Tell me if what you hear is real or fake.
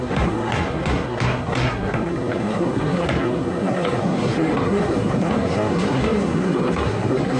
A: fake